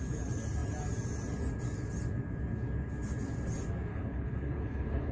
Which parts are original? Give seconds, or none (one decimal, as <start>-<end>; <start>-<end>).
0.0-3.9